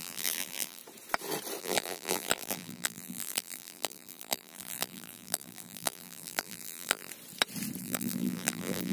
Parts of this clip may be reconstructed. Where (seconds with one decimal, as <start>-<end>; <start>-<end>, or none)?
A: 0.0-0.8; 1.6-7.1; 7.8-8.9